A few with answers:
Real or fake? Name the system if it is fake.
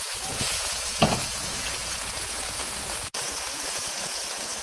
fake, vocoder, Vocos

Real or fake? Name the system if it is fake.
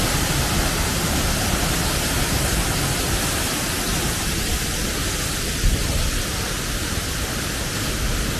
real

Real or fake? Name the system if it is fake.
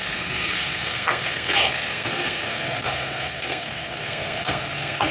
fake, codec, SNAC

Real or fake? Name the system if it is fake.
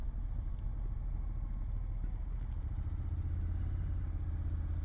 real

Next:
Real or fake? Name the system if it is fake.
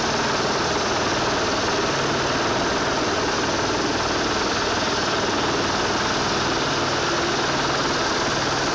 real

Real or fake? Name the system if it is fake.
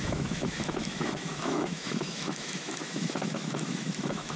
fake, autoencoder, DAC-VAE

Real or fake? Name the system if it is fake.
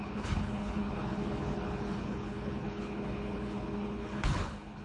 fake, codec, HILCodec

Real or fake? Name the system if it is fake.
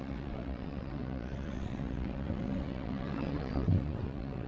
fake, vocoder, WaveNeXt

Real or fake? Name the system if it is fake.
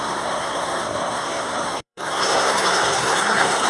fake, codec, SNAC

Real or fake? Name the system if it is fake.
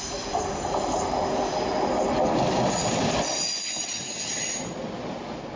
real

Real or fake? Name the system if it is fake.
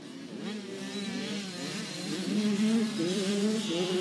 fake, vocoder, BigVGAN v2